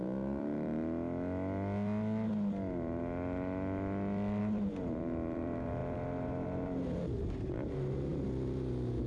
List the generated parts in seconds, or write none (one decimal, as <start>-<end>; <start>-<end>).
0.0-0.8; 4.4-9.1